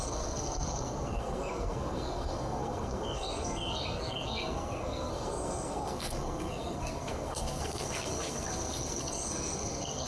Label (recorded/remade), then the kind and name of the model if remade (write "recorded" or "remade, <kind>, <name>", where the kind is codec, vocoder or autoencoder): remade, codec, SNAC